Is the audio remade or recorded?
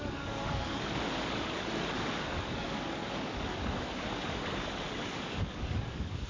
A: remade